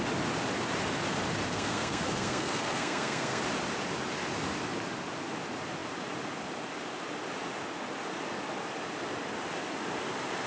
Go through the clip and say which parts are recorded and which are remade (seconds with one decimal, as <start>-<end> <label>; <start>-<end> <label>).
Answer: 0.0-1.5 recorded; 1.5-3.4 remade; 3.4-10.5 recorded